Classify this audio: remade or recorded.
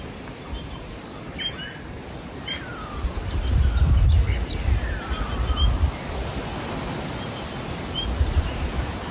recorded